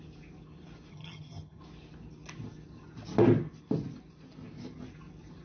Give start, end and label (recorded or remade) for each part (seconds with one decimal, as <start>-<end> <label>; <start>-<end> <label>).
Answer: 0.0-0.9 recorded; 0.9-1.6 remade; 1.6-5.4 recorded